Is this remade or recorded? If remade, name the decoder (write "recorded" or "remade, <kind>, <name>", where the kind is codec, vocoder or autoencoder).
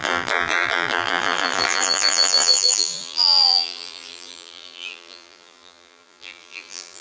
remade, vocoder, BigVGAN v2